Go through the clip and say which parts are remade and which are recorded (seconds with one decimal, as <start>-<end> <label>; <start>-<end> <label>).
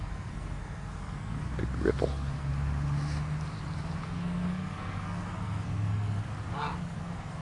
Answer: 0.0-1.5 remade; 1.5-2.1 recorded; 2.1-2.5 remade; 2.5-4.0 recorded; 4.0-6.2 remade; 6.2-6.8 recorded; 6.8-7.4 remade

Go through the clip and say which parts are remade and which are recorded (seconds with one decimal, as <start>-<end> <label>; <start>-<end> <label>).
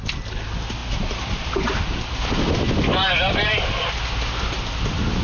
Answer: 0.0-5.2 recorded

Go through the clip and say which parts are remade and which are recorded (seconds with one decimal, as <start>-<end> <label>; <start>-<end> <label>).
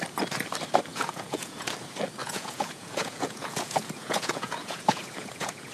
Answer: 0.0-0.9 recorded; 0.9-1.7 remade; 1.7-2.2 recorded; 2.2-5.7 remade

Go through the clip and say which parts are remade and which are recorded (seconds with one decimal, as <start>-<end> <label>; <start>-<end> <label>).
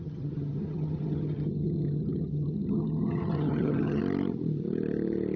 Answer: 0.0-4.0 remade; 4.0-5.4 recorded